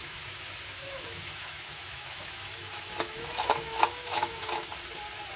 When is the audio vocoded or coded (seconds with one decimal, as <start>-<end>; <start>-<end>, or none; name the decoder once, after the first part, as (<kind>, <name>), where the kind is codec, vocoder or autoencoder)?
0.0-4.7 (autoencoder, DAC-VAE)